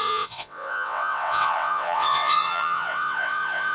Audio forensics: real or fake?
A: fake